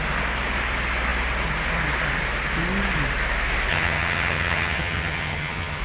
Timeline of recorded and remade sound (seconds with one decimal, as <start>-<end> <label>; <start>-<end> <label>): 0.0-3.7 recorded; 3.7-5.8 remade

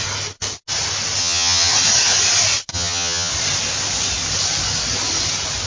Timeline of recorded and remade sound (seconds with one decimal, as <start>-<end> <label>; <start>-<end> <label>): 0.0-1.2 recorded; 1.2-1.7 remade; 1.7-2.7 recorded; 2.7-3.3 remade; 3.3-5.7 recorded

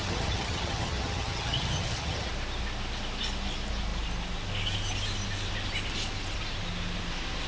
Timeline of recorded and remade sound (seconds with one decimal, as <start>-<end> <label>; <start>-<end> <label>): 0.0-2.3 remade; 2.3-7.5 recorded